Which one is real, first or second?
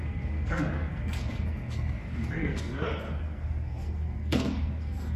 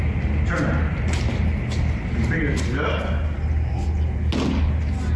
second